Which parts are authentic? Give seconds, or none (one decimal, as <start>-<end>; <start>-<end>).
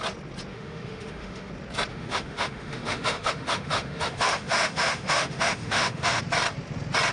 0.0-0.5; 1.5-1.9; 6.2-7.1